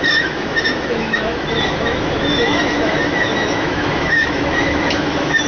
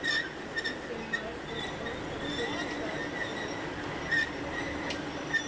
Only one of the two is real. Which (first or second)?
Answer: second